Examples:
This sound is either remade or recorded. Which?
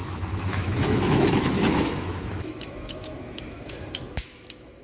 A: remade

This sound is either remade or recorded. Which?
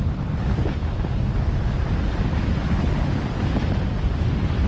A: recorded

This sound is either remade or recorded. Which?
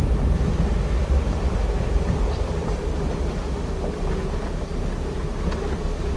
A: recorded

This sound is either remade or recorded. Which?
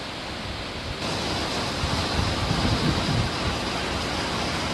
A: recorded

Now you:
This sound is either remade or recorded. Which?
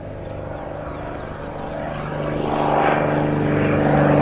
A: recorded